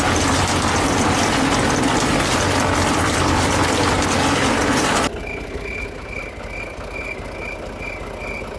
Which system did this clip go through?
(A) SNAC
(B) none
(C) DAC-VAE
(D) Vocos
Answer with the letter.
B